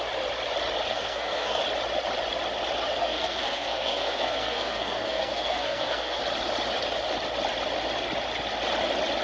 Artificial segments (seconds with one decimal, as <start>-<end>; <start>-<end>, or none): 0.9-1.6; 3.0-6.2